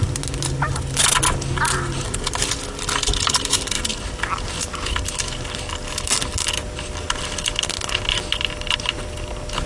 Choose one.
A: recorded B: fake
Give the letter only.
A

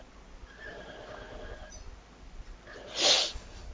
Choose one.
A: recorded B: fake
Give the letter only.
A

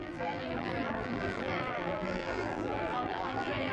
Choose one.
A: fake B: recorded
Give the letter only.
A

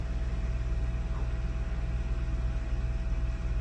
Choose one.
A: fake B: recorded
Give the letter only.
B